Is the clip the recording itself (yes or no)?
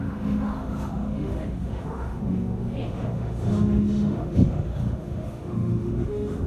no